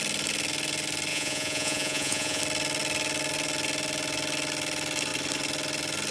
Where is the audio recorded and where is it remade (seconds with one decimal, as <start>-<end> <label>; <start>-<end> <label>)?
0.0-1.1 recorded; 1.1-2.4 remade; 2.4-6.1 recorded